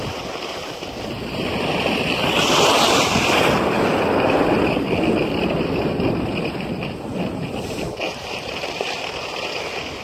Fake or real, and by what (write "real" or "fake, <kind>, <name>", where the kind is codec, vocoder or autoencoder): real